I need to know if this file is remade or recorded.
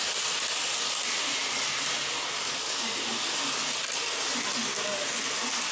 recorded